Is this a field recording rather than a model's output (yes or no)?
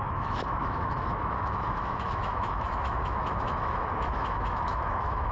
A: no